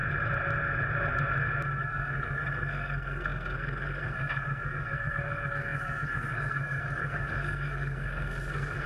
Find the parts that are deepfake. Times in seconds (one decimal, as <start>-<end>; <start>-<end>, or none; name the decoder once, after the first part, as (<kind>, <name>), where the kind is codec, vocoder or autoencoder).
1.8-8.9 (codec, SNAC)